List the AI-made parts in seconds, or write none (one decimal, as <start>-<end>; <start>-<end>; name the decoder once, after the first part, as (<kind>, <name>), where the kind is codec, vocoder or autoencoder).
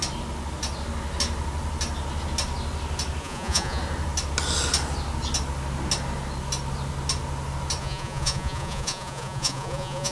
3.2-3.8 (vocoder, Vocos); 7.8-10.1